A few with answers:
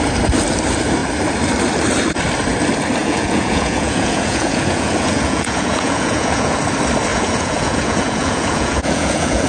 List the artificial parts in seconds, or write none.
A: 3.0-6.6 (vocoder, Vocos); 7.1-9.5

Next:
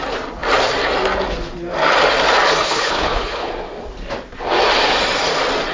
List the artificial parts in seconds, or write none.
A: 2.6-3.5 (codec, HILCodec)